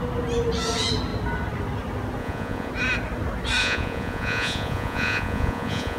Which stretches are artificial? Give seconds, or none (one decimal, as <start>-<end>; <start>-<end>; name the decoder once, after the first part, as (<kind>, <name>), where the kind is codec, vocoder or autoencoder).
2.2-2.7 (vocoder, Vocos); 3.6-6.0